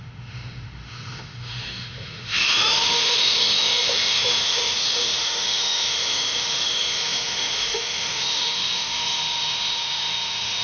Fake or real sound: fake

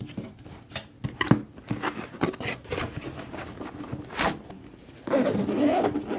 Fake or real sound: real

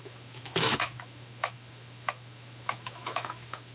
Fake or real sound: fake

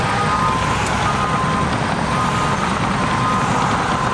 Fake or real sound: real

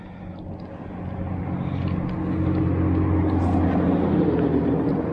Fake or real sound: real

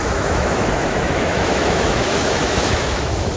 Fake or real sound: fake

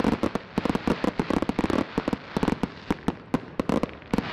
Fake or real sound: real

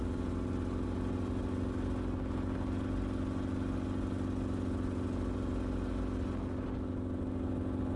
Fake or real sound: real